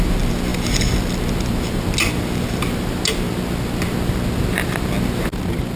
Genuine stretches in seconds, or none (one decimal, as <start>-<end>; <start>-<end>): 0.0-5.8